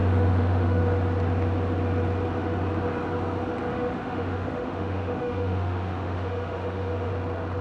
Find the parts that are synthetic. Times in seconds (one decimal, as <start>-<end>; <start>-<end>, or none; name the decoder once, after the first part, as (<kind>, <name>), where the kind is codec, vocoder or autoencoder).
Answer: 0.0-0.8 (autoencoder, DAC-VAE); 3.7-7.1